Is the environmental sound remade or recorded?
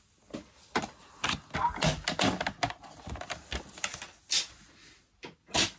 recorded